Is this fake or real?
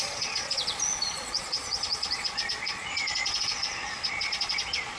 fake